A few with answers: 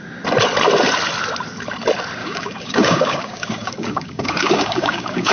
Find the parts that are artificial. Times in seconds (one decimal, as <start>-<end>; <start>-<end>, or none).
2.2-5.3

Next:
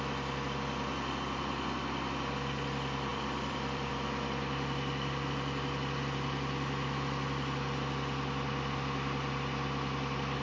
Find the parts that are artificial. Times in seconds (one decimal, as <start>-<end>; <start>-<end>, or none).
3.1-3.9

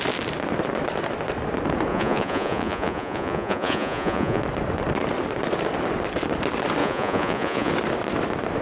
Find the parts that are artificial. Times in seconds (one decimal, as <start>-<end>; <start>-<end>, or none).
1.9-4.4; 6.8-7.7